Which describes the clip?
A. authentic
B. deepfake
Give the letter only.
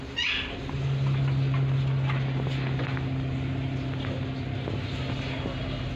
A